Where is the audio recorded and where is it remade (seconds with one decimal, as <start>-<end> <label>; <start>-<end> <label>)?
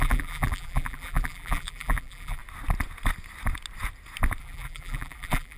0.0-2.4 remade; 2.4-4.4 recorded; 4.4-5.6 remade